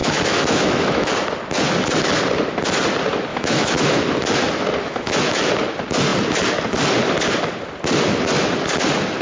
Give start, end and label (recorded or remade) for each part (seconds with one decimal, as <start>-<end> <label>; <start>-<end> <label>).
0.0-1.1 remade; 1.1-3.3 recorded; 3.3-4.0 remade; 4.0-4.8 recorded; 4.8-5.5 remade; 5.5-9.2 recorded